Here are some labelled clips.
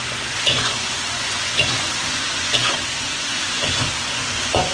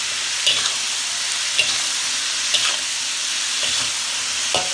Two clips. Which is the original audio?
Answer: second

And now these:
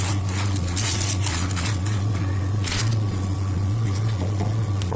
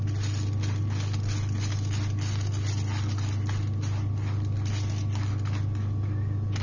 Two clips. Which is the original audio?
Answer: second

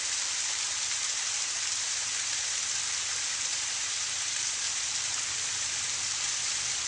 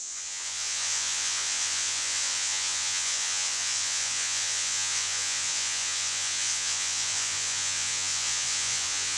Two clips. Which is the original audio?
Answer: first